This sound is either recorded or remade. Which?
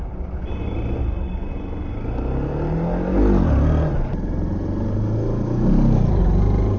recorded